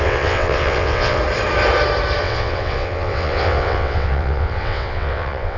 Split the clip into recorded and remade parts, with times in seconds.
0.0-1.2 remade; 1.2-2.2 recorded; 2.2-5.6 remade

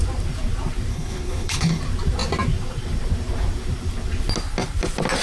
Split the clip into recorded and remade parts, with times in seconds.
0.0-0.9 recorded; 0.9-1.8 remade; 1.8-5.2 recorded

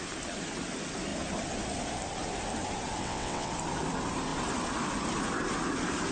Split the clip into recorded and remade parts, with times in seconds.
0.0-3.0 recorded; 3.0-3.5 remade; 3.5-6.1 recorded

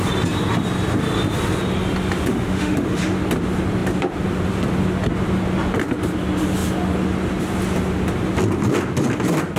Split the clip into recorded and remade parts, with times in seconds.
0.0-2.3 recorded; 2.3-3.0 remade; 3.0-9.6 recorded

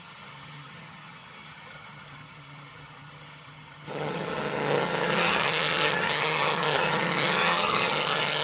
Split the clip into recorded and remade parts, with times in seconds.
0.0-8.4 remade